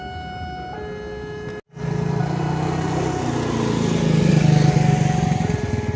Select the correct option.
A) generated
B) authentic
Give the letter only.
B